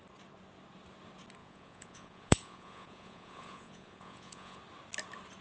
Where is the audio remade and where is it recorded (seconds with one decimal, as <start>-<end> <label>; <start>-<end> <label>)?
0.0-1.4 recorded; 1.4-4.6 remade; 4.6-5.4 recorded